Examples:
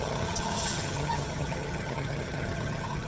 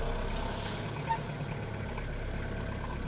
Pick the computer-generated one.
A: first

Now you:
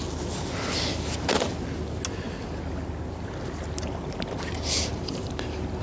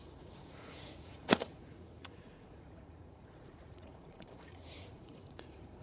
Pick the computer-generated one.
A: second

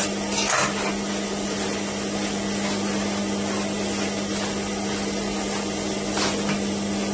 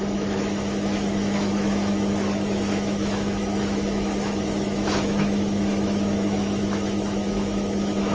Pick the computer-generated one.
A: second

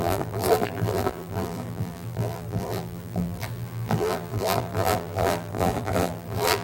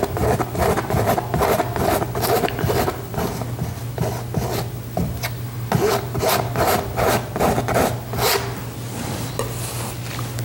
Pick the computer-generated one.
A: first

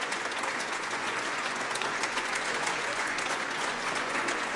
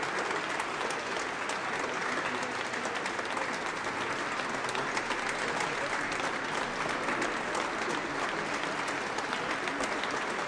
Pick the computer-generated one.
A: first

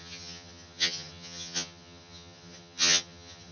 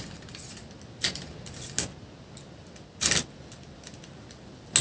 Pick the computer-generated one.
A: first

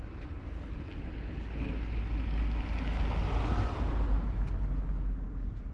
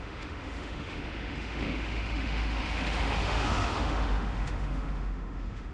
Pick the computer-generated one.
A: second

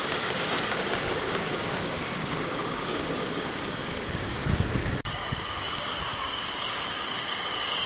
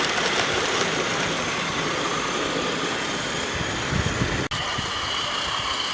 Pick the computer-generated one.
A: first